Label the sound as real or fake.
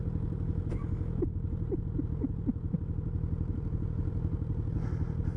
fake